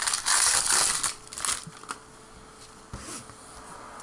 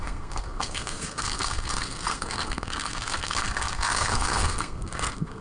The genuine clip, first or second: first